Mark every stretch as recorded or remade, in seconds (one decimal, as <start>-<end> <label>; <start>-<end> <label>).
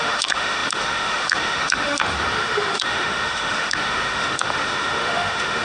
0.0-5.6 remade